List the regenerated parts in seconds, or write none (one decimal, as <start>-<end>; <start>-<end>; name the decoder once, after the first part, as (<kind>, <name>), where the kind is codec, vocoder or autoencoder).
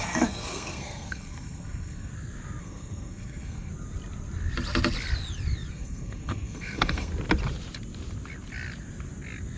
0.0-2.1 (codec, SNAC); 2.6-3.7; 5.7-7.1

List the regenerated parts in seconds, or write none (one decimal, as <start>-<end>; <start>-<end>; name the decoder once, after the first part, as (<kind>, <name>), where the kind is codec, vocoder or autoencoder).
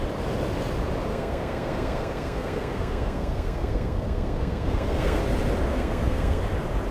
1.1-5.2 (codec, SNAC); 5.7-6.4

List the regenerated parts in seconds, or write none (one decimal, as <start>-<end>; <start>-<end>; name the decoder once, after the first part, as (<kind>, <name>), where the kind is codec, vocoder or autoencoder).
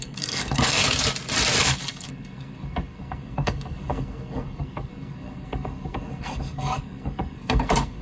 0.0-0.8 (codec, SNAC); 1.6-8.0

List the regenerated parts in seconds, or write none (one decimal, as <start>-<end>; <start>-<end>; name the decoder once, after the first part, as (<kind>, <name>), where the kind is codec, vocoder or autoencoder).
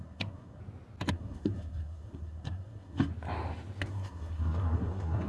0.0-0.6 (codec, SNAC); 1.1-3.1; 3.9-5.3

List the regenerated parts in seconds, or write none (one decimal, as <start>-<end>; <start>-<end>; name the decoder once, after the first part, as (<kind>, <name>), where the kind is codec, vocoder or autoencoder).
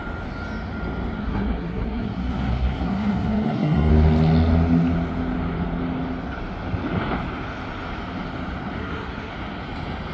1.2-3.9 (codec, SNAC); 8.8-9.3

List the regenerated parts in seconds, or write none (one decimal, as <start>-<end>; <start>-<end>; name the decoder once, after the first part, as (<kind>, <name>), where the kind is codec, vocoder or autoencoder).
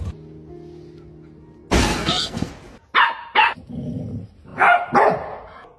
1.8-2.5 (codec, SNAC)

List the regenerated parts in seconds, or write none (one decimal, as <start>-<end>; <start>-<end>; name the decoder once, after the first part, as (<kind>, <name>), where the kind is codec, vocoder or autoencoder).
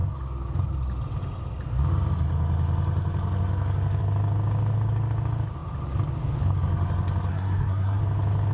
7.3-8.0 (codec, SNAC)